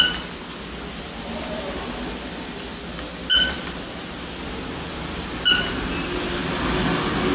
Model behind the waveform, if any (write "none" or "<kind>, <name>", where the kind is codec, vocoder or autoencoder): none